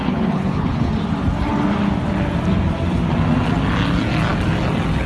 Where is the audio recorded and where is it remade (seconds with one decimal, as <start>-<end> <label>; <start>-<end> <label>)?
0.0-0.9 remade; 0.9-5.1 recorded